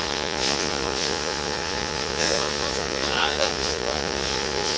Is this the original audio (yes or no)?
no